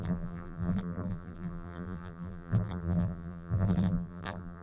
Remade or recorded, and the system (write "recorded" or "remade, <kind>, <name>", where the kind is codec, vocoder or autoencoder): remade, vocoder, BigVGAN v2